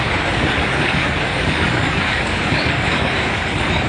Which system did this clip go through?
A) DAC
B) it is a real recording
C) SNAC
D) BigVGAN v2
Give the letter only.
A